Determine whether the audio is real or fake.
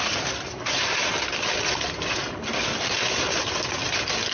real